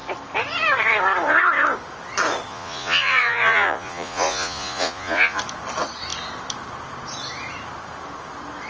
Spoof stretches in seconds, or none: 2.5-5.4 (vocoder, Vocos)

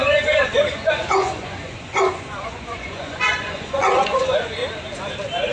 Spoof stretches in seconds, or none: 0.0-4.6 (vocoder, Vocos)

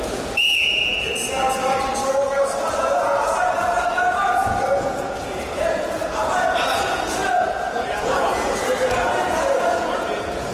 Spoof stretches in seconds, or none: 0.0-1.1 (vocoder, Vocos); 2.7-10.5

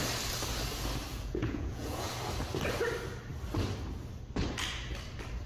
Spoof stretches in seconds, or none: 1.1-2.1 (vocoder, Vocos)

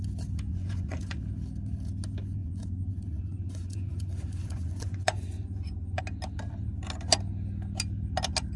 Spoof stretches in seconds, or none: 0.5-1.2 (vocoder, Vocos); 2.4-6.0

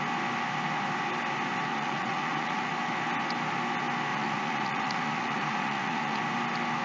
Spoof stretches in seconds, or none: 1.7-2.7 (vocoder, Vocos); 4.1-6.2